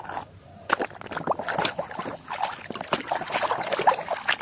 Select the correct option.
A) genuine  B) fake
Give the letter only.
A